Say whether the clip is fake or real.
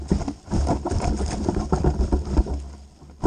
real